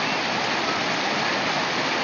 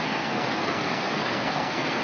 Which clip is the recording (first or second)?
first